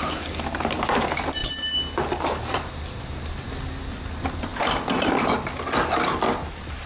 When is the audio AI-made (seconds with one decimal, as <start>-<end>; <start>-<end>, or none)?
none